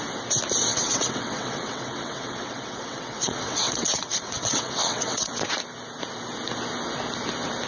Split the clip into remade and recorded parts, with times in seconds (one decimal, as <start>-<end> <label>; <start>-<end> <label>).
0.0-0.7 recorded; 0.7-5.3 remade; 5.3-7.7 recorded

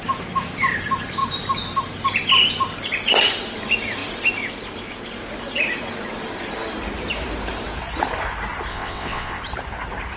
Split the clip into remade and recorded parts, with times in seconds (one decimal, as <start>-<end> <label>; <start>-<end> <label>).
0.0-8.7 recorded; 8.7-9.4 remade; 9.4-10.2 recorded

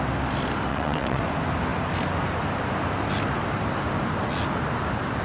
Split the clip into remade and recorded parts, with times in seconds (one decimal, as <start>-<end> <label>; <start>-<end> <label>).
0.0-0.7 recorded; 0.7-1.2 remade; 1.2-5.2 recorded

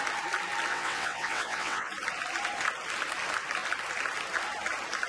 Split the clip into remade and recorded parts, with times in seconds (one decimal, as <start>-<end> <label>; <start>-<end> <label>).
0.0-0.7 recorded; 0.7-1.9 remade; 1.9-5.1 recorded